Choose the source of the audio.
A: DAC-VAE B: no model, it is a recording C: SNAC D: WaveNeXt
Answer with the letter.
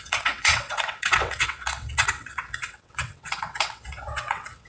D